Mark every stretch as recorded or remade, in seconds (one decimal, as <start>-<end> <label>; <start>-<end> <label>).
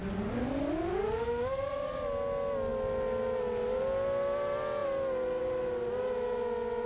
0.0-6.9 recorded